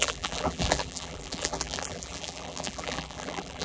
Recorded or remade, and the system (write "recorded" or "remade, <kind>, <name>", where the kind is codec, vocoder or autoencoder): remade, vocoder, BigVGAN v2